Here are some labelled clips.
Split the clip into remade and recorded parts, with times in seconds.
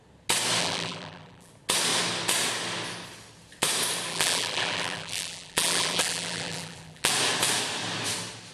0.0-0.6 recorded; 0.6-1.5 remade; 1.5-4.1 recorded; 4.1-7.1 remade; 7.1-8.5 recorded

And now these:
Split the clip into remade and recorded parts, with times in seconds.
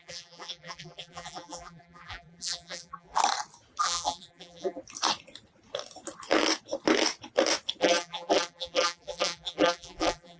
0.0-3.2 remade; 3.2-3.8 recorded; 3.8-4.8 remade; 4.8-7.8 recorded; 7.8-10.4 remade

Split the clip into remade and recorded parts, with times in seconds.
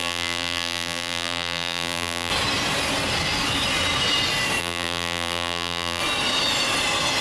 0.0-2.3 remade; 2.3-4.6 recorded; 4.6-6.0 remade; 6.0-7.2 recorded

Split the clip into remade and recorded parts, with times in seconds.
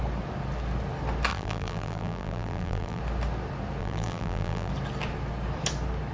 0.0-1.3 recorded; 1.3-3.0 remade; 3.0-3.8 recorded; 3.8-4.7 remade; 4.7-6.1 recorded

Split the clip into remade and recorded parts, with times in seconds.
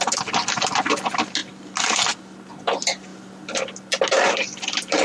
0.0-5.0 recorded